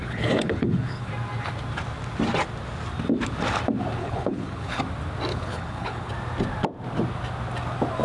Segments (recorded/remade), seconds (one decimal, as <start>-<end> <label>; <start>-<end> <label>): 0.0-1.1 remade; 1.1-4.0 recorded; 4.0-4.8 remade; 4.8-5.3 recorded; 5.3-6.1 remade; 6.1-8.0 recorded